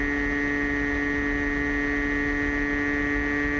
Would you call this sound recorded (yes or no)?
yes